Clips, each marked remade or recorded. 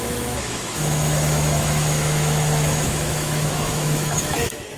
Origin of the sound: remade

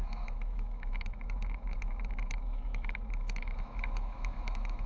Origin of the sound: remade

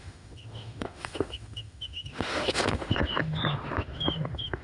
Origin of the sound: remade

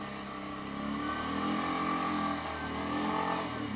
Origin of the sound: recorded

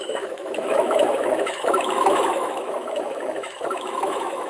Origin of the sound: remade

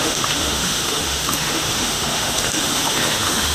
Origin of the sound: remade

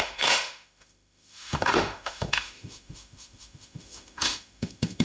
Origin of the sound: remade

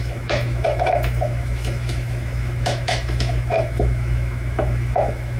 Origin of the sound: remade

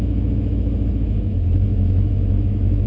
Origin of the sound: remade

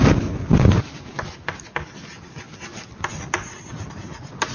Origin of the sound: recorded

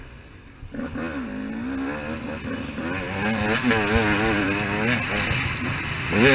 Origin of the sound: recorded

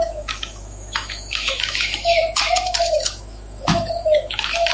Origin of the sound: remade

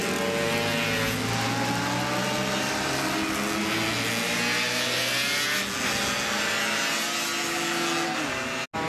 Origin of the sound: recorded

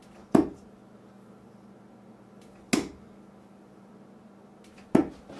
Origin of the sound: recorded